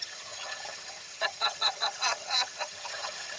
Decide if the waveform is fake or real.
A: fake